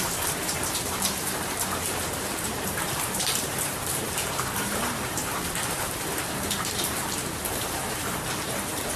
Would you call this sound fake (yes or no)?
yes